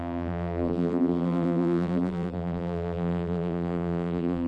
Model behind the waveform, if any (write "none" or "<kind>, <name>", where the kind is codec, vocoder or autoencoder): vocoder, BigVGAN v2